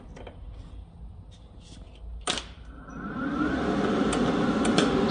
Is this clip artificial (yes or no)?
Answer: no